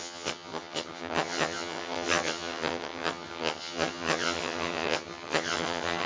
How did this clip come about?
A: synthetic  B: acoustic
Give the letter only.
A